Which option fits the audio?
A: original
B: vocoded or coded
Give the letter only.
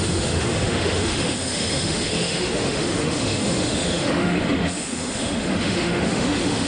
B